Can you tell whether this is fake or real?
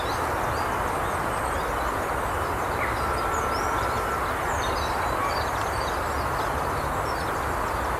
real